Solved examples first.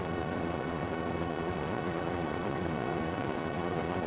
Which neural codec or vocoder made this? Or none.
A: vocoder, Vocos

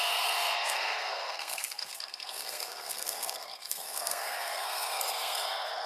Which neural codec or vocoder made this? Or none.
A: codec, SNAC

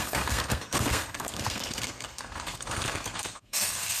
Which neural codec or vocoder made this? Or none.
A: codec, SNAC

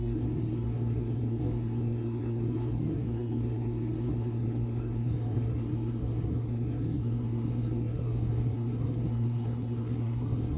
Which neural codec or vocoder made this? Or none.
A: codec, SNAC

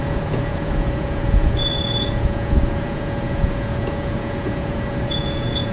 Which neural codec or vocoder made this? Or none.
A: vocoder, Vocos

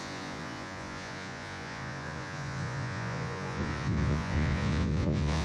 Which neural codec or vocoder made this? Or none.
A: vocoder, Vocos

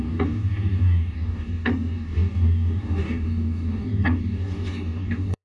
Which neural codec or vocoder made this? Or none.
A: codec, DAC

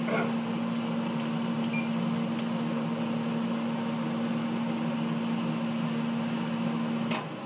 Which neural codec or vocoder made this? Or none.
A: none